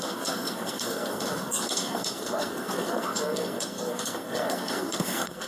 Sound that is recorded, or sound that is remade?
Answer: remade